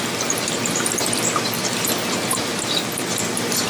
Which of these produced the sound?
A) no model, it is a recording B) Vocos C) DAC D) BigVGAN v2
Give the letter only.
A